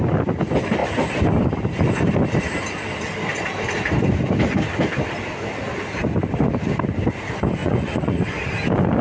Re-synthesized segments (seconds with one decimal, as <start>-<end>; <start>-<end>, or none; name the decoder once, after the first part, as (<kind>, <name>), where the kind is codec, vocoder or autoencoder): 7.6-8.2 (vocoder, Vocos)